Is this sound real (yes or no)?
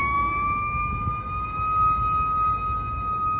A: yes